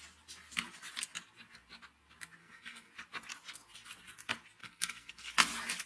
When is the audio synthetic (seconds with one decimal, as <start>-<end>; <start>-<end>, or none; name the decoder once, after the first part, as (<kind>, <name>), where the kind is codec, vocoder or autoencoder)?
2.4-2.9 (codec, SNAC); 4.6-5.3